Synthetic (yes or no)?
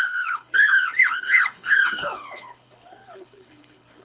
yes